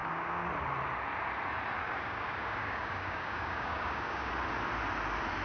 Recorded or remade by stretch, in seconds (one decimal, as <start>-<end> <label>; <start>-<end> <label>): 0.0-0.5 remade; 0.5-1.8 recorded; 1.8-4.3 remade; 4.3-5.4 recorded